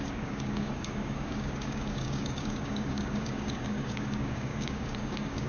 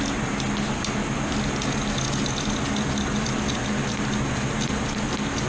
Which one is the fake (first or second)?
first